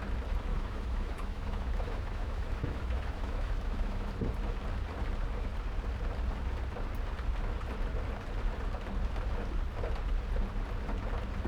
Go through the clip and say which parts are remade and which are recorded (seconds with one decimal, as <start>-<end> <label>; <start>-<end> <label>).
0.0-0.5 recorded; 0.5-4.1 remade; 4.1-11.5 recorded